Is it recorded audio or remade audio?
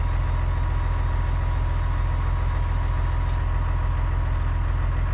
recorded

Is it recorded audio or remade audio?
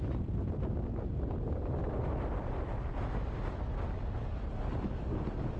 recorded